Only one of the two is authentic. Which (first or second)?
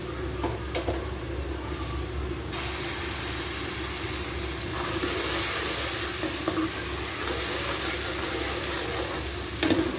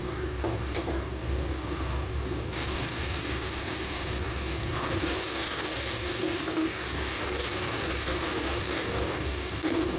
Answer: first